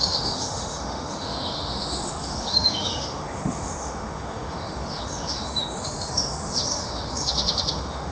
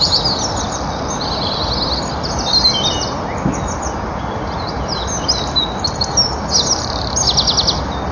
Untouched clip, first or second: second